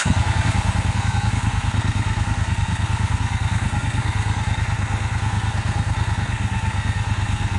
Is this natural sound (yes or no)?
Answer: no